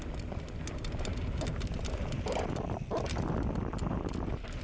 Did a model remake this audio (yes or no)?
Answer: no